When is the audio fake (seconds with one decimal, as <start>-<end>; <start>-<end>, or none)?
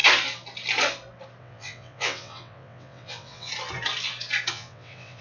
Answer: 1.4-3.5; 4.5-5.2